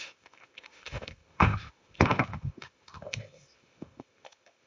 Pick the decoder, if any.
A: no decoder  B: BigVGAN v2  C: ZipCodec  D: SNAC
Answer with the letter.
C